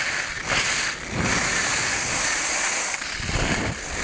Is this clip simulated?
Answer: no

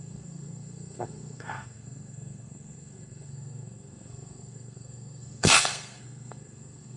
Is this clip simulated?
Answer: yes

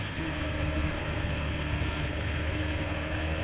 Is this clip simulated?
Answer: yes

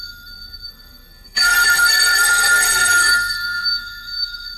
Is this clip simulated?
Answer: yes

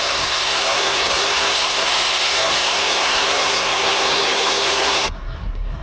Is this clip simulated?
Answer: yes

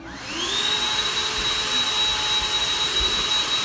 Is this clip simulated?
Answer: no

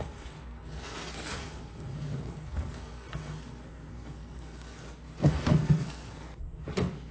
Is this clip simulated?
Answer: yes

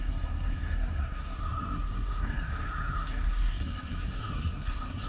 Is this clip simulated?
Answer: yes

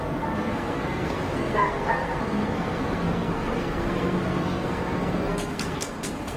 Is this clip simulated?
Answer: yes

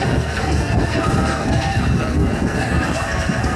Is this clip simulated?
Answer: yes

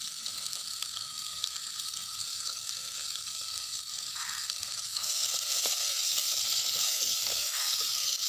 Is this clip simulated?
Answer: yes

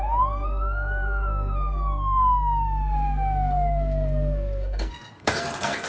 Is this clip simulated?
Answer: yes